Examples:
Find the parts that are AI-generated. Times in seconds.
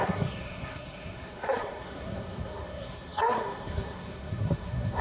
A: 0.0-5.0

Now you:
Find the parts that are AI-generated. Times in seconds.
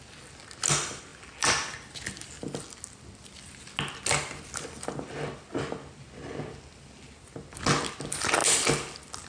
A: none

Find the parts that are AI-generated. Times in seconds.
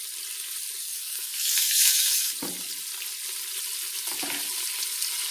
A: 0.8-2.3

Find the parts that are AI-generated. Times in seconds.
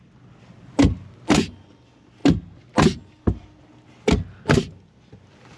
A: none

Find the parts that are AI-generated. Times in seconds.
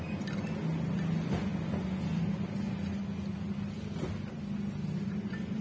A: none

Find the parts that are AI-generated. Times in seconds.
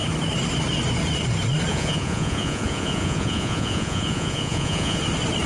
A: 1.7-5.0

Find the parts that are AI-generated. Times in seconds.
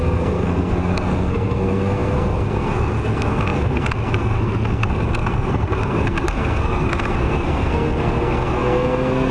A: 0.0-9.3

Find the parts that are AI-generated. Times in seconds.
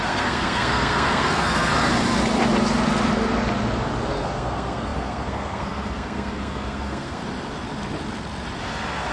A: 0.0-1.7; 4.1-7.2; 8.6-9.1